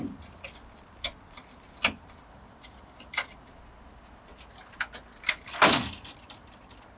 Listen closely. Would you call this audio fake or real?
real